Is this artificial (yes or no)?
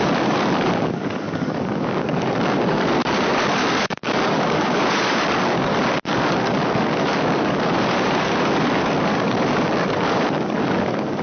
yes